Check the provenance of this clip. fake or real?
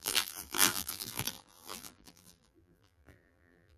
fake